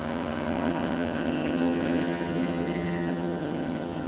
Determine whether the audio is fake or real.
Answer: fake